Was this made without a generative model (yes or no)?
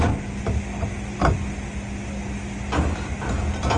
yes